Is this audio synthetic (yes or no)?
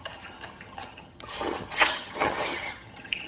yes